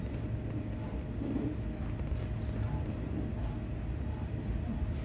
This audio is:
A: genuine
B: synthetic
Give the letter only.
A